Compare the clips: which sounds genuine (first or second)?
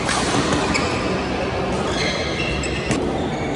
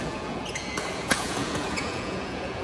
first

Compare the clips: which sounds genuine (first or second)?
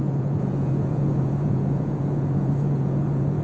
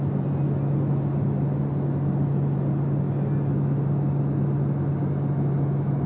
second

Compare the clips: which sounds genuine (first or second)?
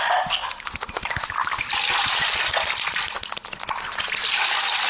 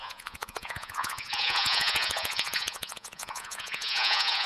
first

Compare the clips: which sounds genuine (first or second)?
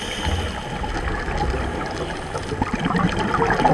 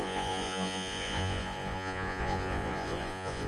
first